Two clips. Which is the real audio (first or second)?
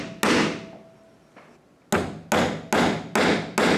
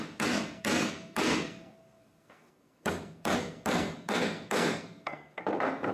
first